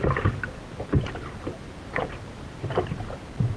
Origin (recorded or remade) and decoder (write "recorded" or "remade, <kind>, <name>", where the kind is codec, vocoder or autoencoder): recorded